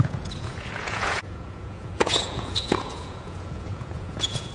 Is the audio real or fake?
fake